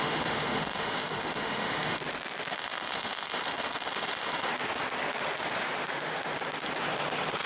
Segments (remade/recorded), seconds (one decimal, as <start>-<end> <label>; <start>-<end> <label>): 0.0-2.0 remade; 2.0-2.5 recorded; 2.5-4.5 remade; 4.5-7.5 recorded